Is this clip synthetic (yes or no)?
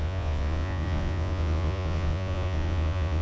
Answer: yes